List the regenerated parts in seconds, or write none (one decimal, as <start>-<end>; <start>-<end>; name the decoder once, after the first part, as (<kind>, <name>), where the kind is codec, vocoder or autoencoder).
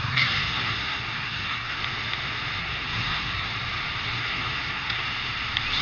0.0-1.8 (codec, SNAC); 2.6-3.5; 4.2-5.0